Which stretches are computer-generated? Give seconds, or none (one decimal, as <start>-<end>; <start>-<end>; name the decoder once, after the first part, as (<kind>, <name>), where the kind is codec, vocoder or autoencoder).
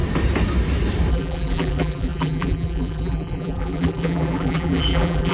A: 1.1-5.3 (vocoder, BigVGAN v2)